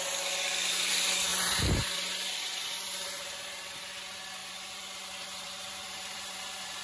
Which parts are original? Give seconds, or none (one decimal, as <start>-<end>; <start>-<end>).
0.0-1.3; 3.8-4.4